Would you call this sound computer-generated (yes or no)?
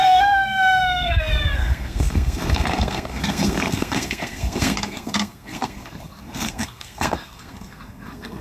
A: yes